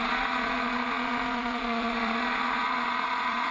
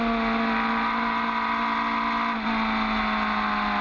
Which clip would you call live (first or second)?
second